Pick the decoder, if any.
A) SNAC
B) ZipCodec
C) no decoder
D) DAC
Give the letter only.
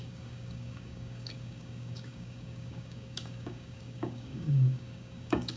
D